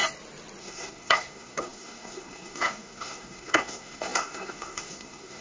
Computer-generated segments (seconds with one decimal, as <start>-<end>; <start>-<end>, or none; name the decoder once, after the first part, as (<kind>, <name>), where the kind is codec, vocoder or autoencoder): 0.6-5.4 (codec, SNAC)